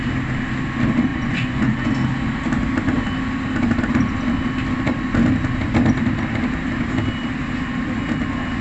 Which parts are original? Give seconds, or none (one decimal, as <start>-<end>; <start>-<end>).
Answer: 0.0-1.1; 1.9-8.6